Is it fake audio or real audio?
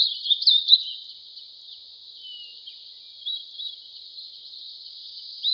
real